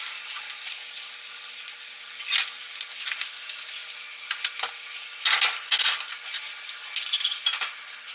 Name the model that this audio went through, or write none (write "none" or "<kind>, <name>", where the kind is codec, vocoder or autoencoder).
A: none